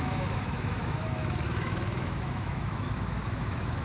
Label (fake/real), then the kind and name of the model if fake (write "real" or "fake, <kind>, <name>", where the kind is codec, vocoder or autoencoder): fake, autoencoder, DAC-VAE